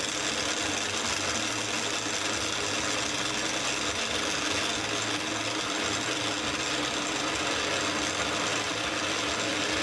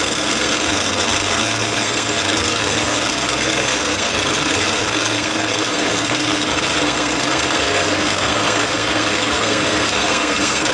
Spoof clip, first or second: second